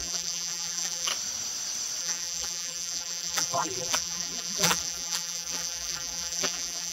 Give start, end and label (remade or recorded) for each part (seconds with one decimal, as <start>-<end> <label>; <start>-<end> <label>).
0.0-1.1 remade; 1.1-2.0 recorded; 2.0-6.9 remade